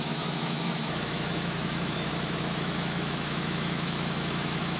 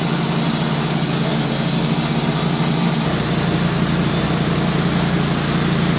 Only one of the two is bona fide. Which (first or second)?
second